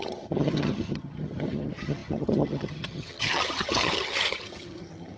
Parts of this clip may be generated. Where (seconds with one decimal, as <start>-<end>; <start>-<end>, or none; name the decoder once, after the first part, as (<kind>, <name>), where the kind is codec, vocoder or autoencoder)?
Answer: 0.0-5.2 (vocoder, HiFi-GAN)